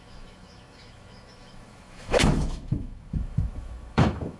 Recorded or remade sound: remade